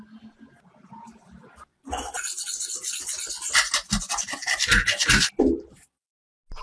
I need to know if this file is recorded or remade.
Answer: recorded